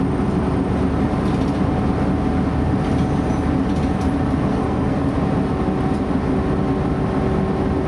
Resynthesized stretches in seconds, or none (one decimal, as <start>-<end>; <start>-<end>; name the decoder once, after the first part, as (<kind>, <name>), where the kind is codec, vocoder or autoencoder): 4.5-5.0 (codec, SNAC)